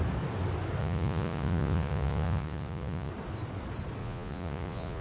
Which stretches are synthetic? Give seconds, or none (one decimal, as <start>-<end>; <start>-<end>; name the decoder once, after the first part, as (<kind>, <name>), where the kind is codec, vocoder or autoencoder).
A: 0.8-3.1 (vocoder, Vocos); 4.0-5.0